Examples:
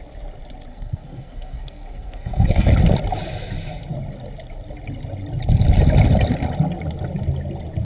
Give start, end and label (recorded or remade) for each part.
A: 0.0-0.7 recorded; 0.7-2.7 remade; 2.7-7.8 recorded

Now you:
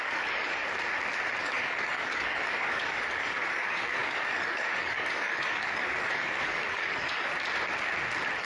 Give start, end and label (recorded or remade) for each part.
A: 0.0-0.6 remade; 0.6-1.4 recorded; 1.4-7.3 remade; 7.3-8.4 recorded

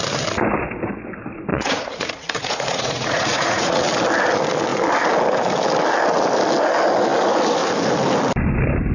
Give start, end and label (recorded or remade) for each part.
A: 0.0-1.5 recorded; 1.5-3.8 remade; 3.8-8.9 recorded

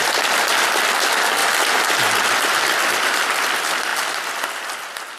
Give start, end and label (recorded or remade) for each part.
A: 0.0-5.2 recorded

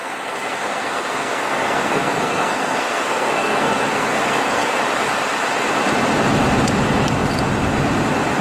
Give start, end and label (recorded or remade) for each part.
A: 0.0-4.8 remade; 4.8-8.4 recorded